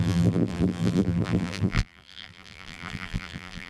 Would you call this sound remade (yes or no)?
yes